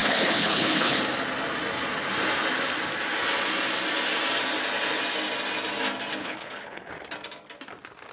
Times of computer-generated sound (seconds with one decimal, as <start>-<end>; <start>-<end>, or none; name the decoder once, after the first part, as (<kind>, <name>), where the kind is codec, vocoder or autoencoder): 0.0-1.0 (codec, HILCodec); 6.2-6.9